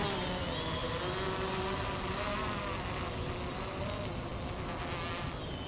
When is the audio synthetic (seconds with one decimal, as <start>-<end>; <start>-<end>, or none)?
none